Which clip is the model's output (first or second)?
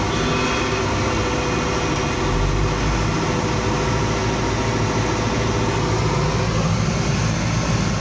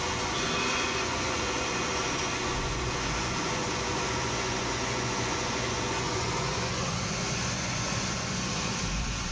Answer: second